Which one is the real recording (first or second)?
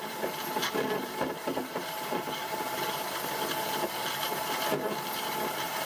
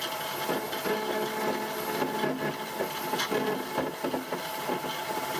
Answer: second